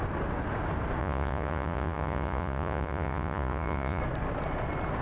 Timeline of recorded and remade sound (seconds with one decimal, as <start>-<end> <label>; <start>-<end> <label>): 0.0-1.0 recorded; 1.0-4.0 remade; 4.0-5.0 recorded